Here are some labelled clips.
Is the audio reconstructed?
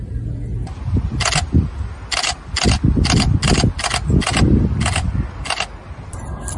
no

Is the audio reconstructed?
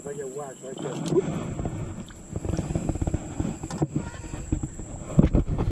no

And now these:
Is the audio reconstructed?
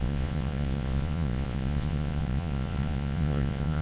yes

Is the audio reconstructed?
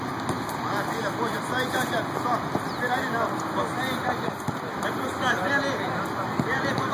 no